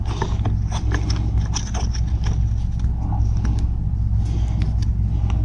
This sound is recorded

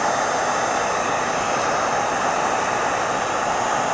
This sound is recorded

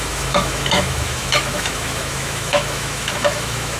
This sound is remade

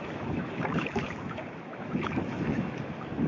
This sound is remade